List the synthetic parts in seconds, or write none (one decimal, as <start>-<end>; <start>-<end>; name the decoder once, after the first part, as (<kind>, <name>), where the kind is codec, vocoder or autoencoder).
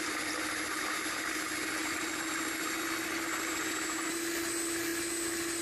none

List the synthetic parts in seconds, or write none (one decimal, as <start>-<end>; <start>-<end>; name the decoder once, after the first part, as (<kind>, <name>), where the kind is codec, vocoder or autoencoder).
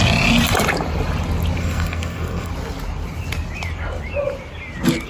1.6-2.5 (codec, SNAC)